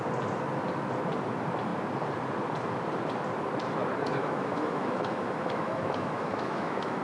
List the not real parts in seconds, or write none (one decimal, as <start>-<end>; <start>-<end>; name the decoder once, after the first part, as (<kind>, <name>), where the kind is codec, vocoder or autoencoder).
4.2-7.0 (autoencoder, DAC-VAE)

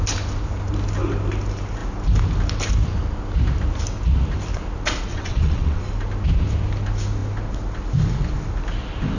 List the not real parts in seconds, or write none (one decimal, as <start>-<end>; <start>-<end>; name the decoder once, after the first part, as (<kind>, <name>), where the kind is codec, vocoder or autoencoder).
5.1-5.8 (vocoder, WaveNeXt)

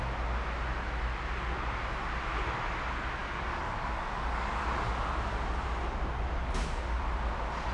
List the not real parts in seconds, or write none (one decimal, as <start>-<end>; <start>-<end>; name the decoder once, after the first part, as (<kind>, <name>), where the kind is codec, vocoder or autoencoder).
3.2-4.7 (codec, DAC); 6.4-7.0

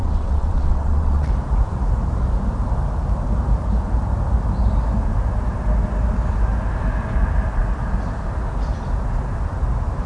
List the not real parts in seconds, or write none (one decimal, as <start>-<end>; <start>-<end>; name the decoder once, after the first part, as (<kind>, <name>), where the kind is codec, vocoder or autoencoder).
0.0-1.3 (vocoder, WaveNeXt)

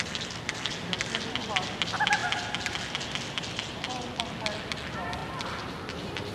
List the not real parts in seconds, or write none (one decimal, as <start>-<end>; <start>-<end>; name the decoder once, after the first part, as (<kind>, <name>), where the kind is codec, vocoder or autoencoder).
none

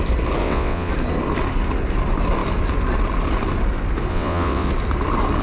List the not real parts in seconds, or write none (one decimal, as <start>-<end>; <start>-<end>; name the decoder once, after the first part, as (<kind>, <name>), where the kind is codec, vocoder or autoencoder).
0.4-0.9 (vocoder, WaveNeXt); 4.1-4.7